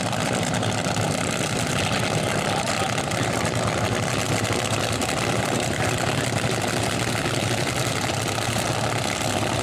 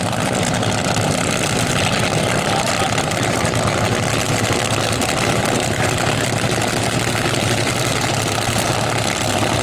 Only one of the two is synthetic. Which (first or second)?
first